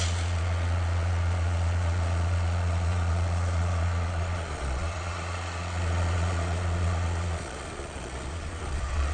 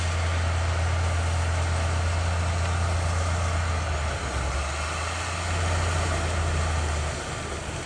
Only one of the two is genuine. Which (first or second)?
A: second